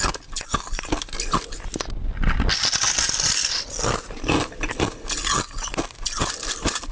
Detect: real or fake real